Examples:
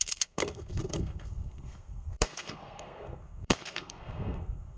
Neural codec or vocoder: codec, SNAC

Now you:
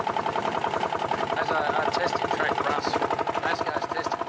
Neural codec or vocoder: none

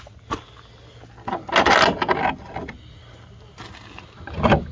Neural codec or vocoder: none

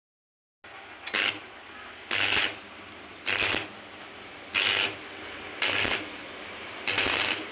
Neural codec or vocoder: none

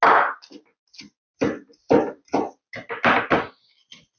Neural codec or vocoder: none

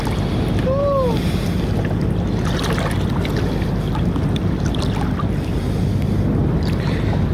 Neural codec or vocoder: none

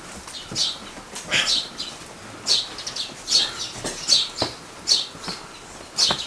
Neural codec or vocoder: none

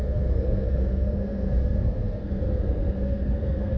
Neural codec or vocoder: codec, SNAC